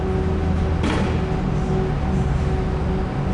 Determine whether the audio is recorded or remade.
recorded